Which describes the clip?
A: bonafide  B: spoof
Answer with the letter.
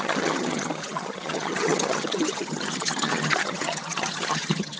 B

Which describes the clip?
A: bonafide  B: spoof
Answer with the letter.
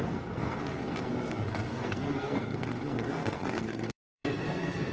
B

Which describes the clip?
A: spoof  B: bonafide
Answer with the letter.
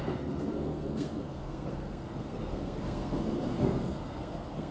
A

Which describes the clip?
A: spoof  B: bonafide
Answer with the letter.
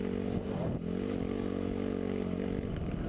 B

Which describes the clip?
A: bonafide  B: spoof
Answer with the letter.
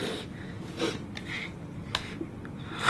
A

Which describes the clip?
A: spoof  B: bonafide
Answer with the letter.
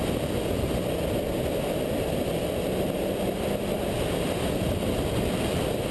B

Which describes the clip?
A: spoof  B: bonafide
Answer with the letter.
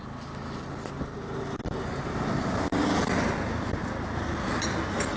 B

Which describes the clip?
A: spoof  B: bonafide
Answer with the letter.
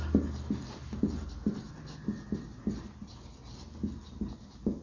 B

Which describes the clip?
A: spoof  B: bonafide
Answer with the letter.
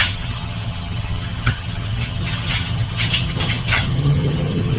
A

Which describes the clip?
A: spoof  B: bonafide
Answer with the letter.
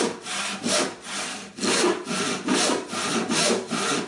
B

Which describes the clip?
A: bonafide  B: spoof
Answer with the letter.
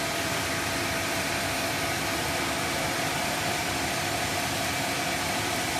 B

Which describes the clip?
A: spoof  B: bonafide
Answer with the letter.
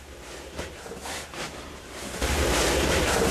A